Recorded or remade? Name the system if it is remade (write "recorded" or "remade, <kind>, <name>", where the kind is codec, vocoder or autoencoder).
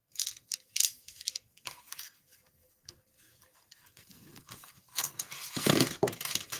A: remade, codec, SNAC